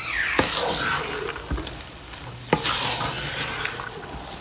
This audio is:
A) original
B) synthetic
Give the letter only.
A